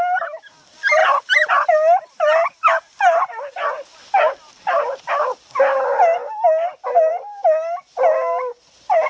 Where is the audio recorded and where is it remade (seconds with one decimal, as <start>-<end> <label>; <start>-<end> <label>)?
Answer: 0.0-9.1 recorded